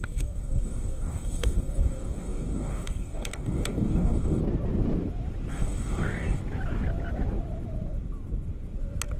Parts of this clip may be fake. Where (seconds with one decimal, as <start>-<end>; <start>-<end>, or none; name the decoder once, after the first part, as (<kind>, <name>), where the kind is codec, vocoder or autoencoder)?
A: 0.0-4.4 (codec, DAC); 5.5-6.4